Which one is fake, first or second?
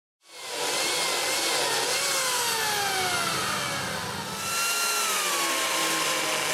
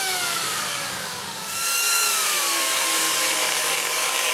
second